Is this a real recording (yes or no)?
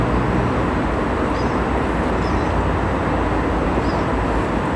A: yes